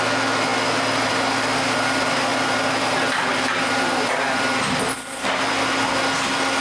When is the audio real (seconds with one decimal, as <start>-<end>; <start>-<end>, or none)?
0.0-6.6